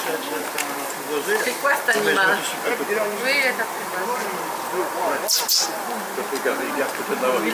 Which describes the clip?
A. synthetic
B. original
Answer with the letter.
B